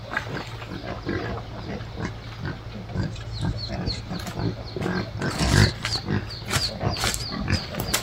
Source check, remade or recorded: recorded